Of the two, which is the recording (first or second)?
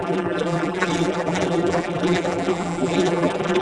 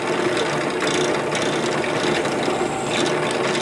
second